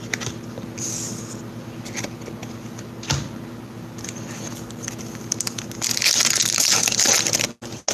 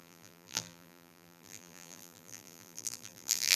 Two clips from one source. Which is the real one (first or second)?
first